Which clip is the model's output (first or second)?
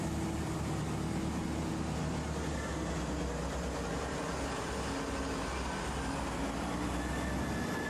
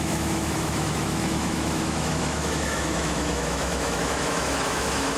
second